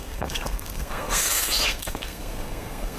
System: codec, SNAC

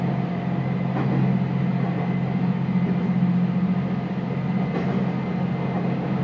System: none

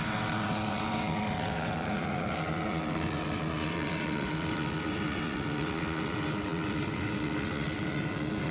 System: vocoder, WaveNeXt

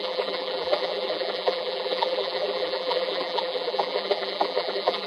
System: vocoder, BigVGAN v2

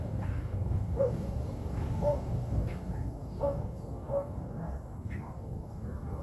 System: codec, DAC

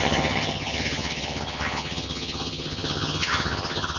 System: vocoder, HiFi-GAN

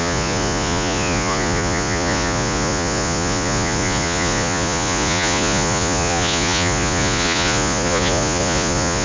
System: vocoder, Vocos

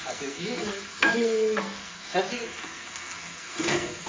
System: codec, SNAC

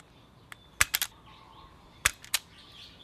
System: none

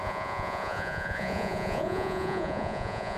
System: vocoder, Vocos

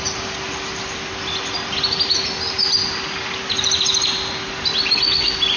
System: none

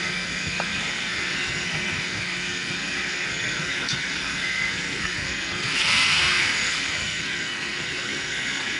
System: codec, SNAC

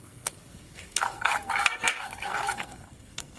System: codec, SNAC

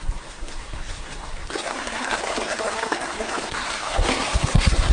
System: codec, SNAC